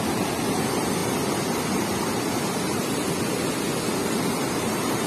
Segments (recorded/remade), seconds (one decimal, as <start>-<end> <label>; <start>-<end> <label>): 0.0-1.0 recorded; 1.0-2.4 remade; 2.4-4.0 recorded; 4.0-5.1 remade